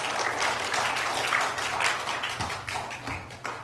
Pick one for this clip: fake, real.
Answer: real